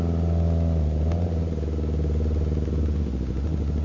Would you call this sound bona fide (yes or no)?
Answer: yes